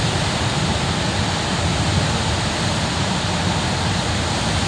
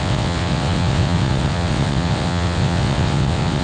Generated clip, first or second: second